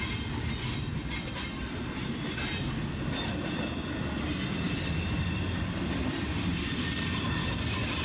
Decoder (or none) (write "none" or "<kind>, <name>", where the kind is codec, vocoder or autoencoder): none